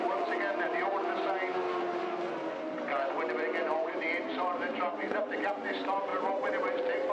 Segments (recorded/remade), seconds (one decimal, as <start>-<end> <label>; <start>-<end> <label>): 0.0-1.6 remade; 1.6-3.8 recorded; 3.8-7.1 remade